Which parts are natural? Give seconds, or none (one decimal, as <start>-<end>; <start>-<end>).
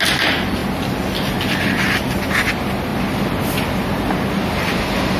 0.0-5.2